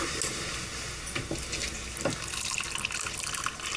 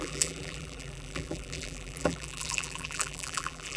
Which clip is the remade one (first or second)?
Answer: second